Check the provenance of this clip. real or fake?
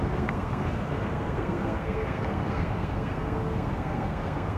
fake